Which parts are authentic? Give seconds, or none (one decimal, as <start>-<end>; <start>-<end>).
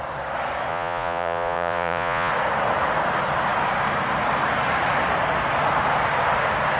0.0-0.7; 2.3-6.8